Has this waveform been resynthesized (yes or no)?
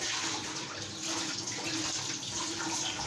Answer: no